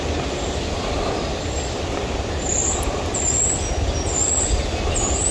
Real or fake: real